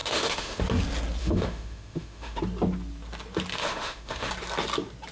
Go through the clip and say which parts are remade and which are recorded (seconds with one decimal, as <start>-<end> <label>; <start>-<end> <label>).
0.0-0.6 remade; 0.6-1.2 recorded; 1.2-2.4 remade; 2.4-3.5 recorded; 3.5-4.3 remade; 4.3-5.1 recorded